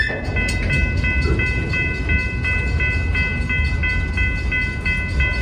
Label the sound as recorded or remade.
recorded